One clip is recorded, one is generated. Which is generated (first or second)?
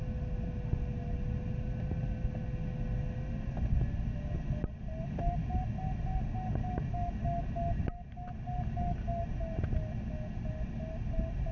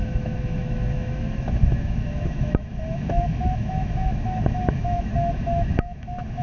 second